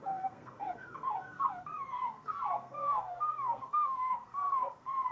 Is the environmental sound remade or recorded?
remade